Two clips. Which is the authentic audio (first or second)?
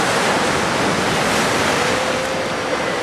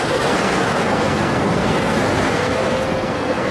first